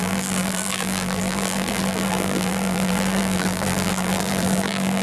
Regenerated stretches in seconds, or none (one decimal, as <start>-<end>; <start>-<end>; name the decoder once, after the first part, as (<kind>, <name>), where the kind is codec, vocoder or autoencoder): 0.0-5.0 (vocoder, BigVGAN v2)